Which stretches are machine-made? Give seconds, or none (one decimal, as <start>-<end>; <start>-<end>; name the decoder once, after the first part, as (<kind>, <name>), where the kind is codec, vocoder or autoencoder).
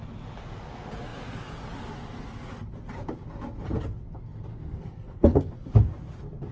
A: 4.5-5.5 (codec, SNAC)